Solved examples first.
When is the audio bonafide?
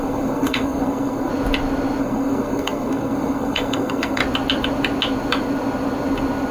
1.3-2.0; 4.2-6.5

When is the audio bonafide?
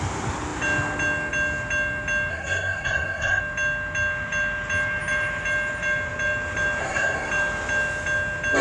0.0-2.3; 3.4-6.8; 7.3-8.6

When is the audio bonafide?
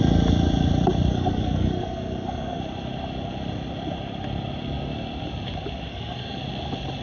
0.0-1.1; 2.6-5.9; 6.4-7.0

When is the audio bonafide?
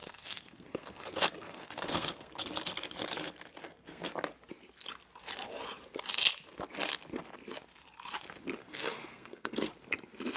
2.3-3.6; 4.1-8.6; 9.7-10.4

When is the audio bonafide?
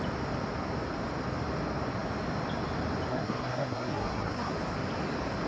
0.0-3.1; 4.5-5.5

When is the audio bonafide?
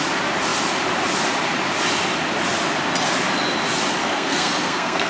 0.0-4.0